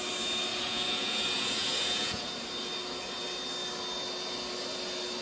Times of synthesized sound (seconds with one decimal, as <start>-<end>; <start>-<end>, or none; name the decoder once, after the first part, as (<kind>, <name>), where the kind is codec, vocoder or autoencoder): 0.5-2.3 (vocoder, Vocos)